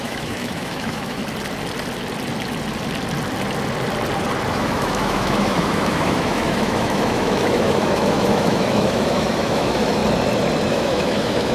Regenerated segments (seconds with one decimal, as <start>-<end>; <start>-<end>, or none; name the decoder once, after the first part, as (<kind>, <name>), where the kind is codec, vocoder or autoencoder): 0.0-1.2 (autoencoder, DAC-VAE); 4.5-10.0; 10.7-11.5